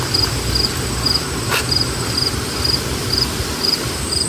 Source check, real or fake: real